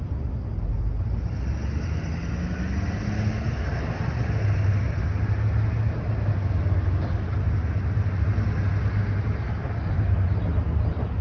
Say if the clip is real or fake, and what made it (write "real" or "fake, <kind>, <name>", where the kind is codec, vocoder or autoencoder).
real